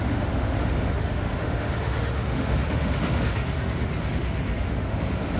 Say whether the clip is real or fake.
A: fake